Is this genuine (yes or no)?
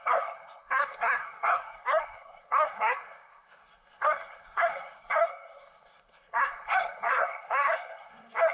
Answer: no